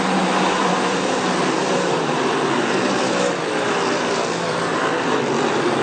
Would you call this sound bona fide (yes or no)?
yes